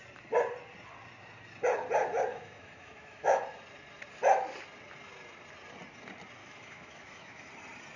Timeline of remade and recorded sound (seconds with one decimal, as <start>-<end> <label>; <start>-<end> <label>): 0.0-2.3 recorded; 2.3-3.4 remade; 3.4-6.4 recorded; 6.4-7.5 remade; 7.5-8.0 recorded